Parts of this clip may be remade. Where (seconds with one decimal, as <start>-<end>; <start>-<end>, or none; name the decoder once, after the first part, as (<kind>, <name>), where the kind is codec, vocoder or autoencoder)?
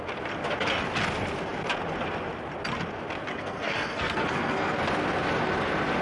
3.3-4.8 (codec, SNAC)